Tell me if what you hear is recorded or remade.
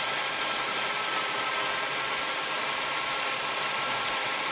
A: recorded